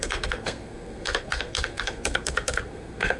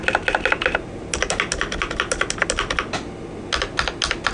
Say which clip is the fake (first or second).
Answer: first